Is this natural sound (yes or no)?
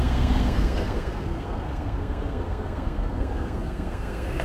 no